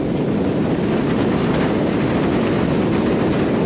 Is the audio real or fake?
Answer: real